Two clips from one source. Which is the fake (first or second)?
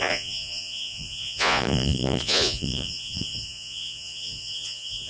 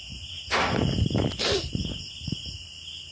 first